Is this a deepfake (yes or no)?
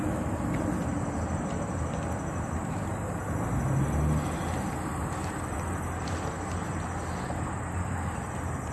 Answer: no